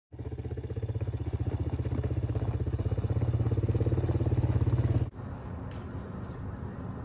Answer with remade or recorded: recorded